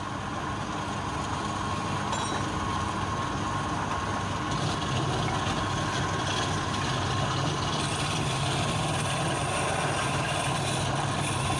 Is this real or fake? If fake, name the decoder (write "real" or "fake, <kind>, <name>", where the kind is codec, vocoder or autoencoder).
real